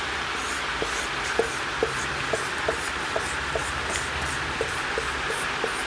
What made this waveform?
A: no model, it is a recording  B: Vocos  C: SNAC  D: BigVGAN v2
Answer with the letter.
A